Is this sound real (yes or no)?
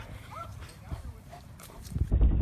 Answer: no